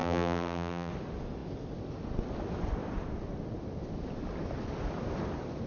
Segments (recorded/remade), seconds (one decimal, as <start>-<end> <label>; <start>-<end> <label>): 0.0-0.9 remade; 0.9-5.7 recorded